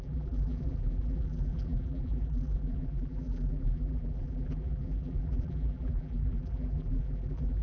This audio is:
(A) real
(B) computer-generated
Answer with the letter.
B